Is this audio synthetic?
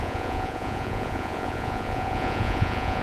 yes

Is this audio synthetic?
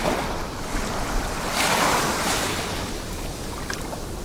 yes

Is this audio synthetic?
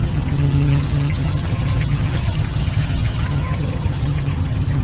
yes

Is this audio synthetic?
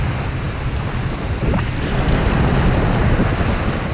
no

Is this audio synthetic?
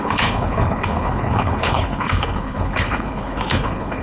yes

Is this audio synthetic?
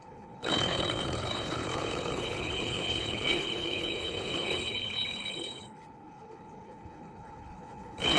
yes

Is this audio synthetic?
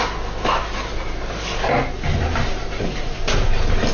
no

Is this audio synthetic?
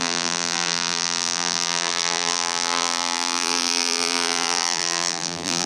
yes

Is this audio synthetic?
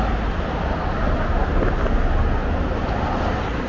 no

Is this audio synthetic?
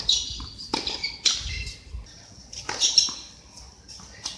no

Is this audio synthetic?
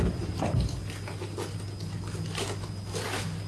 no